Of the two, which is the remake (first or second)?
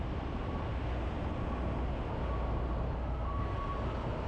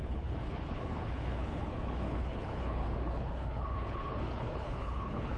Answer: second